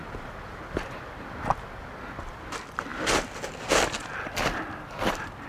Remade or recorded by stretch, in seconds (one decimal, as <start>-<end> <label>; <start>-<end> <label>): 0.0-2.4 recorded; 2.4-5.5 remade